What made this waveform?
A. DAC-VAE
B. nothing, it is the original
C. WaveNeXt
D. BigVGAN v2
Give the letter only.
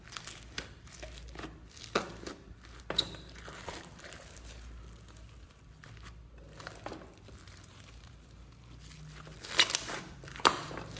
B